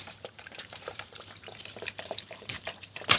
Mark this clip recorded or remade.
remade